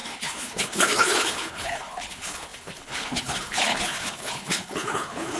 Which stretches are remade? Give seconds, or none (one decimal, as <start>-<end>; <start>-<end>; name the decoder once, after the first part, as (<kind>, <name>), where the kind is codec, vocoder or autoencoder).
0.0-5.4 (codec, HILCodec)